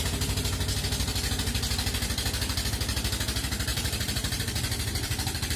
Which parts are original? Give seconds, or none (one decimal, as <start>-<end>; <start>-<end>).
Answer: 0.0-3.7